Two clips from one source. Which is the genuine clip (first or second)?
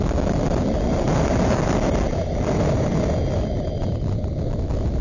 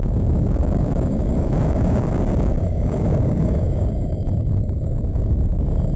first